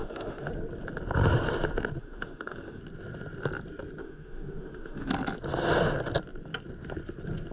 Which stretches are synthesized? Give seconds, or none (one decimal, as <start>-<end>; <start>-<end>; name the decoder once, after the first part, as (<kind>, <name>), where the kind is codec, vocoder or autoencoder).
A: 0.0-0.5 (autoencoder, DAC-VAE); 2.0-2.8; 4.0-5.1

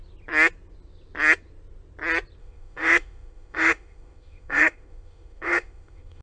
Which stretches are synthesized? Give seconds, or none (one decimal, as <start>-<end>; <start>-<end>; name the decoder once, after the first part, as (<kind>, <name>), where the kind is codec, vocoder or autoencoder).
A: 2.4-6.2 (autoencoder, DAC-VAE)

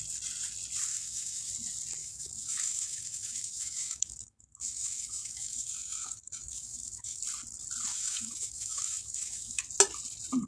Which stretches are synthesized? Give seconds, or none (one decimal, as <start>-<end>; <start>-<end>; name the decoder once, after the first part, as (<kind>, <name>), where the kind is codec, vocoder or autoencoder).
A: 0.9-1.5 (autoencoder, DAC-VAE); 2.0-7.2; 7.9-9.6

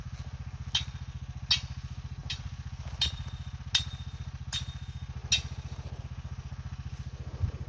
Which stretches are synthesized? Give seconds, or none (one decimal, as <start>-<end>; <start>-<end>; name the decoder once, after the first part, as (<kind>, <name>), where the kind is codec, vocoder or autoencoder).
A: none

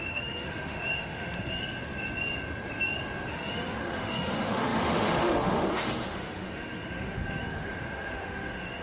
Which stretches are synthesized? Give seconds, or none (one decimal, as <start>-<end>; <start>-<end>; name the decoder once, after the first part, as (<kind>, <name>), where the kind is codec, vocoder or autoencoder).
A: 0.0-1.6 (autoencoder, DAC-VAE); 3.3-8.8